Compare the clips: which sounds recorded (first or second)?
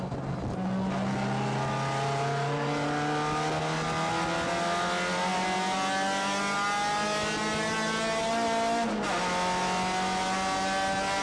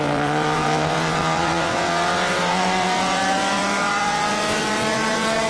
first